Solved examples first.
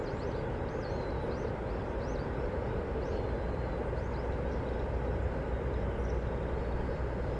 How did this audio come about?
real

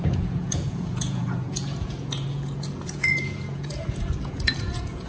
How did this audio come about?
fake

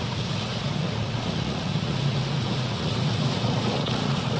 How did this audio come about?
fake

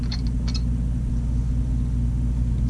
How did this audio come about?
real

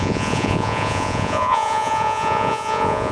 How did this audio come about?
fake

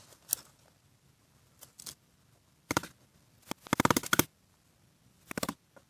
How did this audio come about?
real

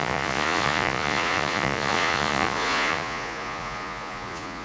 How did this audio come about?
fake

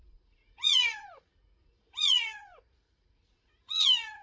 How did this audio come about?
fake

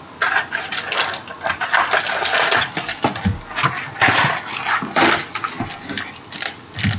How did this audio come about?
real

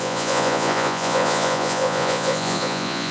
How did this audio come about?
fake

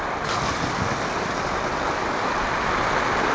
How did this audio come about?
real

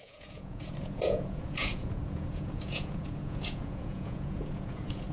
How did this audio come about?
fake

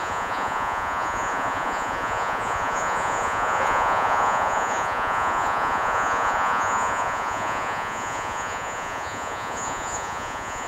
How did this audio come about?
fake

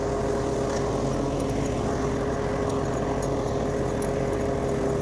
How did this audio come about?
real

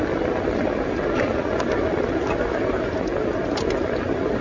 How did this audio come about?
real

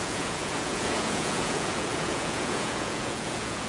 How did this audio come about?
fake